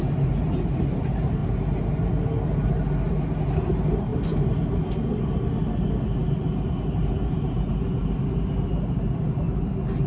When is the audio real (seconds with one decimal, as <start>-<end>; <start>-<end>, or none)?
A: 0.0-10.1